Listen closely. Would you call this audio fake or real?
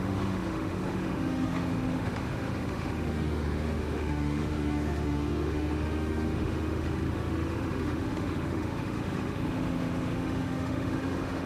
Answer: fake